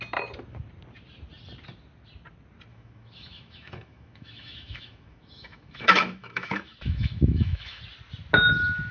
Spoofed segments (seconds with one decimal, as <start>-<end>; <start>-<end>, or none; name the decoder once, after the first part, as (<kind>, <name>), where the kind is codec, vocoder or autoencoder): 2.7-7.8 (autoencoder, DAC-VAE)

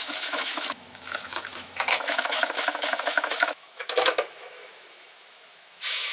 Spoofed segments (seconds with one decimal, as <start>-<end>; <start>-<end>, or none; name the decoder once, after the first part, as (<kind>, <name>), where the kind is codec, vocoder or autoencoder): 0.0-6.1 (autoencoder, DAC-VAE)

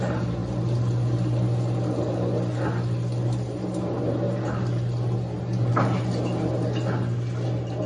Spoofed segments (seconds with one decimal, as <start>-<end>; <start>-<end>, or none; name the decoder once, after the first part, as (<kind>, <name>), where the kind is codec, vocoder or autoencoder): none

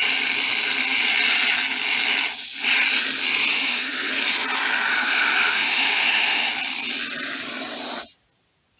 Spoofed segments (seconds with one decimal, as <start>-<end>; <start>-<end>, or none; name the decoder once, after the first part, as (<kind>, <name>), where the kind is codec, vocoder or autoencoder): 3.5-4.1 (autoencoder, DAC-VAE); 4.9-6.5

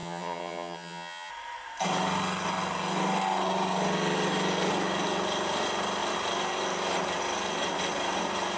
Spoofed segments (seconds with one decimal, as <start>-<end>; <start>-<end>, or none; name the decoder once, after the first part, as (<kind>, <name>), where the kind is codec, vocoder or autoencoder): 0.0-1.3 (vocoder, HiFi-GAN)

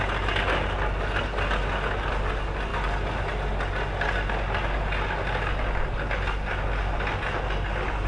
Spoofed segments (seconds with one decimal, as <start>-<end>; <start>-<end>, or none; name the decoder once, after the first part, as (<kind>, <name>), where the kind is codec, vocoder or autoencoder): none

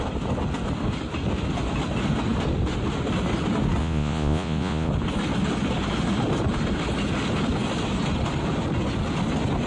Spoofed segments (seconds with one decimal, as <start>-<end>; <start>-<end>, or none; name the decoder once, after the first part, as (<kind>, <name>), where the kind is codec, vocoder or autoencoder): 3.8-4.9 (vocoder, Vocos)